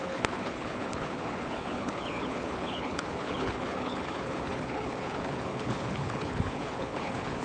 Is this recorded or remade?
remade